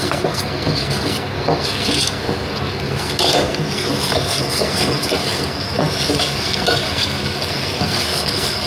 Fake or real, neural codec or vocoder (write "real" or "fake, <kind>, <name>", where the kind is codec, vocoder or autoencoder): fake, codec, SNAC